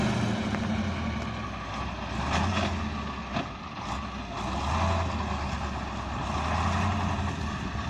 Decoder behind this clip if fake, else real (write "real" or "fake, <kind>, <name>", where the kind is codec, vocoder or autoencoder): real